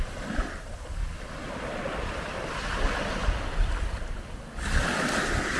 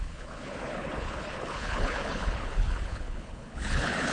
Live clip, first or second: first